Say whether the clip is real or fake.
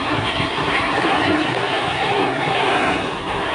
fake